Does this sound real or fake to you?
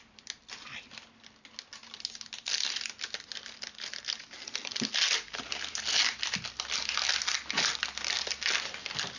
real